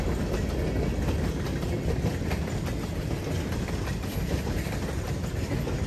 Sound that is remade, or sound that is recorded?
recorded